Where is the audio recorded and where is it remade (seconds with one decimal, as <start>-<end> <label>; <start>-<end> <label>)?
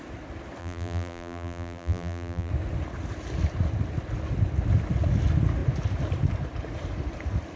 0.0-0.6 recorded; 0.6-2.5 remade; 2.5-7.6 recorded